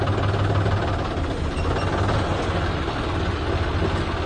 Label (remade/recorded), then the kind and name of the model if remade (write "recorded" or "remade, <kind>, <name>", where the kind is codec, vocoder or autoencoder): recorded